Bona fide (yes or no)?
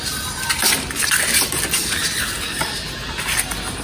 yes